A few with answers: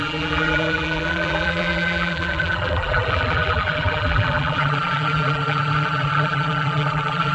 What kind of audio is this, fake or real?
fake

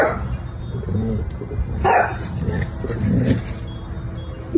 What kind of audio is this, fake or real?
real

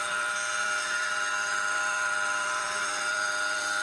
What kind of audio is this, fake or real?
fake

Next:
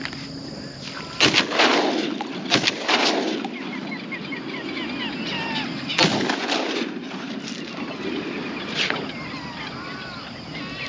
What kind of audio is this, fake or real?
real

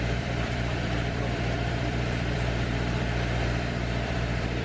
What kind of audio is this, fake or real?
fake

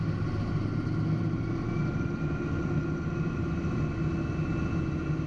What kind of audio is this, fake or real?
real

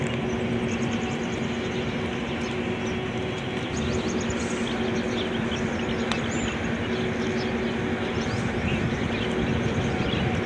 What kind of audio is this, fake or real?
real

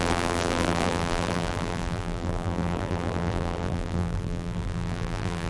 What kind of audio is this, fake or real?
fake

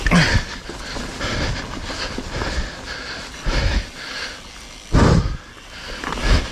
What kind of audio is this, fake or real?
real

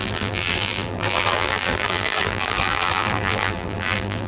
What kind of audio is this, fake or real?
fake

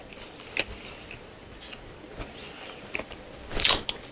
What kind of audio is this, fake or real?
real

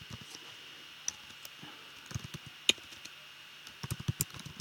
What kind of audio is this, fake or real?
real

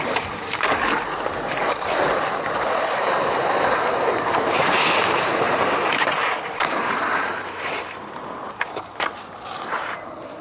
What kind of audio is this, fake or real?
fake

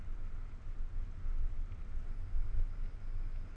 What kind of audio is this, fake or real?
real